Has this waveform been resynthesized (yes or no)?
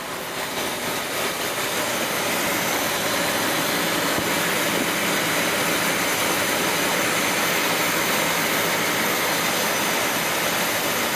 no